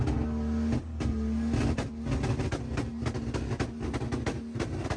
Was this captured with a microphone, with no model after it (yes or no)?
yes